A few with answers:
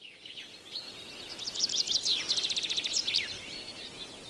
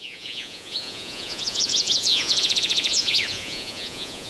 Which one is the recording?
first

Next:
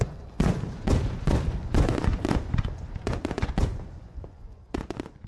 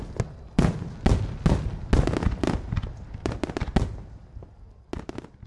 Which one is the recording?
second